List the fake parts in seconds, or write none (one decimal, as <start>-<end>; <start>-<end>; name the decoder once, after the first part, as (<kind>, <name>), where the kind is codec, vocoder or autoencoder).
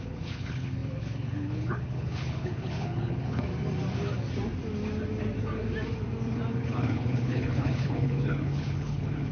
0.0-3.5 (codec, HILCodec); 6.5-9.3